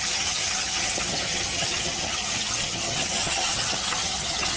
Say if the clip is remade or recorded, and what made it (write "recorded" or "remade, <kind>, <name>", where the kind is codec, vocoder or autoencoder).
remade, vocoder, HiFi-GAN